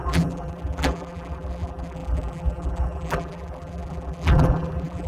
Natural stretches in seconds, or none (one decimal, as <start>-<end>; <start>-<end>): none